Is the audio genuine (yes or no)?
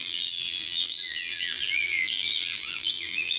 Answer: no